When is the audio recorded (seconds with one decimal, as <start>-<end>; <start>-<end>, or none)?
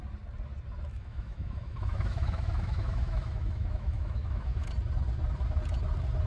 0.0-0.9; 4.7-6.3